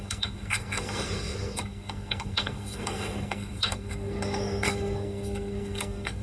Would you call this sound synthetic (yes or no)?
yes